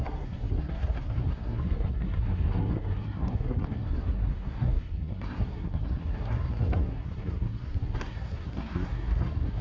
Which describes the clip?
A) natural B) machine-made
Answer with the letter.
B